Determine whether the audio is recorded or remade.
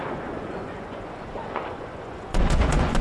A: remade